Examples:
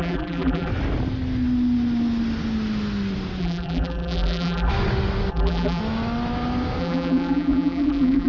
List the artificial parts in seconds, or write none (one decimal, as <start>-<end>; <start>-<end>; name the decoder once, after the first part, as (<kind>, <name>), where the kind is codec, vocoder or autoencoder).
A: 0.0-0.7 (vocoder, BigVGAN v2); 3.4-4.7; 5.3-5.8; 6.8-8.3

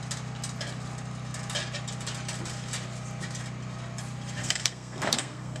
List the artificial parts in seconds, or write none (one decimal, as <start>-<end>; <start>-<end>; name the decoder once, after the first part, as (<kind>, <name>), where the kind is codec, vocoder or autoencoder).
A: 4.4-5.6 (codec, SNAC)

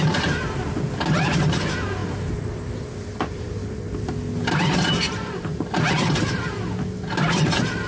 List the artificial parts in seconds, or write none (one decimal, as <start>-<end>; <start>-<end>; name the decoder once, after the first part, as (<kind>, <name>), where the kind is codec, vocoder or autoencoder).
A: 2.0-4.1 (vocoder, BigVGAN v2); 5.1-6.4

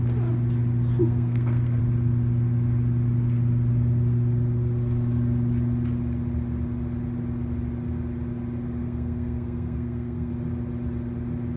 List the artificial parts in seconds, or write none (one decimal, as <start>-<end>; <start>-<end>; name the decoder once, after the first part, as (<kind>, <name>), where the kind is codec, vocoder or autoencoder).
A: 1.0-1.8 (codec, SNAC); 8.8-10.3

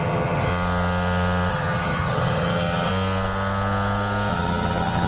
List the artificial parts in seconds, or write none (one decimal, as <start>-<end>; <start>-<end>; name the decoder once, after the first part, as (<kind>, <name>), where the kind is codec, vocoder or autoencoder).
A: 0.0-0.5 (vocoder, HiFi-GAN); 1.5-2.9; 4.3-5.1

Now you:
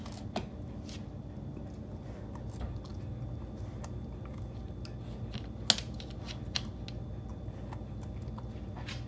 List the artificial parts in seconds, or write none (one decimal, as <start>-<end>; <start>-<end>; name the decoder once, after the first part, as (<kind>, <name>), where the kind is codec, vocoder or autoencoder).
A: none

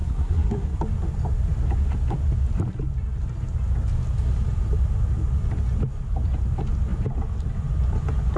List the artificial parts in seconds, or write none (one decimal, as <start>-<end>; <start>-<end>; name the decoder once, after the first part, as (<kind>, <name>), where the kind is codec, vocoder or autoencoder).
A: 0.0-0.8 (codec, SNAC)

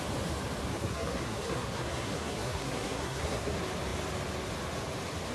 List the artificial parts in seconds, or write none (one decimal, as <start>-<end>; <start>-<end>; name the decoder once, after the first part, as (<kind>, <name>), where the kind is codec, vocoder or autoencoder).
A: 0.7-3.5 (codec, SNAC)